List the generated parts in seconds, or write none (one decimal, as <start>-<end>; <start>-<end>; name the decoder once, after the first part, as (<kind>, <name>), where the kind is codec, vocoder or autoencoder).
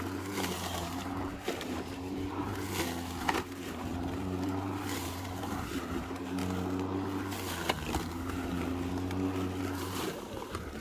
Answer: 0.0-2.5 (vocoder, BigVGAN v2); 3.2-6.4; 9.6-10.8